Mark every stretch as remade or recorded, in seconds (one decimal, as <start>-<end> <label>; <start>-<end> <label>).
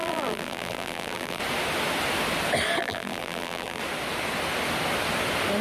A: 0.0-1.4 remade; 1.4-2.8 recorded; 2.8-3.8 remade; 3.8-5.6 recorded